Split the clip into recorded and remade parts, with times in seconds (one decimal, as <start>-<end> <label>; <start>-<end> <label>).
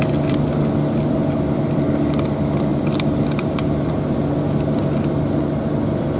0.0-6.2 recorded